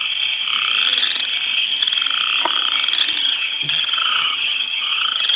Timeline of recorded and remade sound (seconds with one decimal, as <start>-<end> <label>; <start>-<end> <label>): 0.0-3.2 recorded; 3.2-5.4 remade